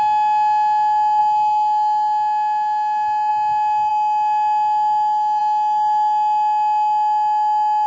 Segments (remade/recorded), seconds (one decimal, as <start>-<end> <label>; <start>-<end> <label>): 0.0-7.9 recorded